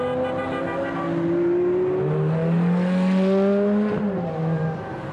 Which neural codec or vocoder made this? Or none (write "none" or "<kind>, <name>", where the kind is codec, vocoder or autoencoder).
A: none